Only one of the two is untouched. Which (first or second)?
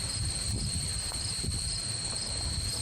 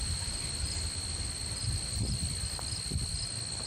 second